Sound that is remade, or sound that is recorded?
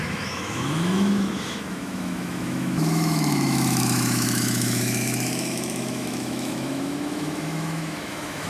remade